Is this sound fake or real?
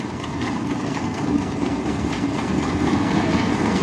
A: fake